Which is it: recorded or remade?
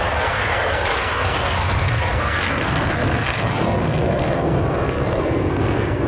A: remade